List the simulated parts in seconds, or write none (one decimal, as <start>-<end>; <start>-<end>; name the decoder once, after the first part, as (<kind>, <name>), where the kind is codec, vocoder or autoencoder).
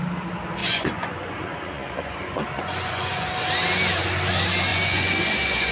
0.6-3.3 (vocoder, Vocos); 4.7-5.7